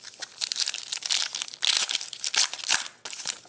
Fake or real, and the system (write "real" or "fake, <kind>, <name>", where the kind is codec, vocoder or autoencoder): real